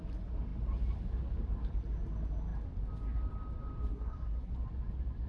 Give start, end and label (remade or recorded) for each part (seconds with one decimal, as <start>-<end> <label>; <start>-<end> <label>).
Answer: 0.0-3.9 recorded; 3.9-4.5 remade; 4.5-5.3 recorded